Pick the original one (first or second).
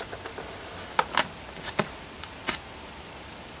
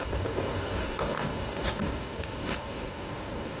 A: first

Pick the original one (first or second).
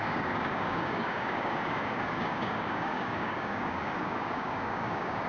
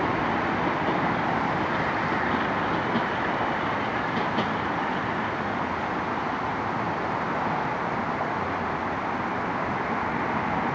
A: second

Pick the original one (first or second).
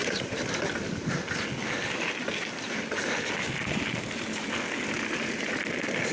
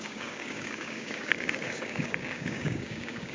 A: first